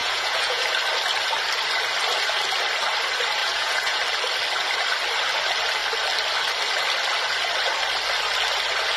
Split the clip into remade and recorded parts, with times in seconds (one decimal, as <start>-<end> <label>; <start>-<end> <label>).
0.0-0.6 remade; 0.6-3.4 recorded; 3.4-4.0 remade; 4.0-9.0 recorded